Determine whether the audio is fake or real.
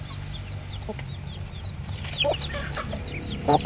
real